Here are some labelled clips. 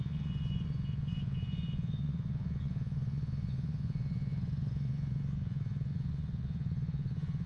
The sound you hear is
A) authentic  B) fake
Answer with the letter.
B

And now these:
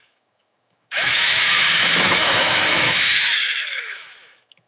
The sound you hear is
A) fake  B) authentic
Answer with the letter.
A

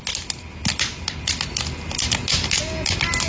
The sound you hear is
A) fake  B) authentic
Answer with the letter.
B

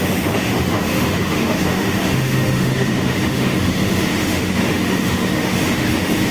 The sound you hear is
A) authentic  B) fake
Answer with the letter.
B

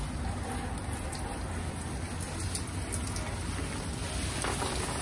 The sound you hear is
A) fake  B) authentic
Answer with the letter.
B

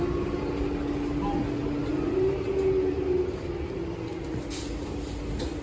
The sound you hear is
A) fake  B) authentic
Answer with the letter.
B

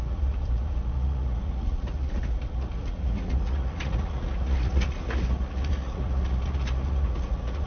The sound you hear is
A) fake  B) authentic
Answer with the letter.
A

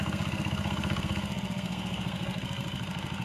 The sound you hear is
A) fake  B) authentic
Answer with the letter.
A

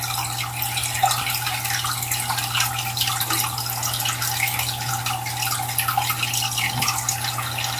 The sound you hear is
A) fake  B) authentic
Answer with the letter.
B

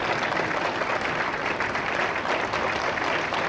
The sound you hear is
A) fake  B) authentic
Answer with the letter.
B